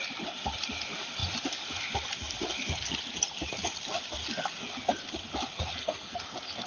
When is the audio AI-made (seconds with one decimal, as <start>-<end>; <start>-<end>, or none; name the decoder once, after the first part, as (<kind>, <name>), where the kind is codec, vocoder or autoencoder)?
5.8-6.3 (codec, SNAC)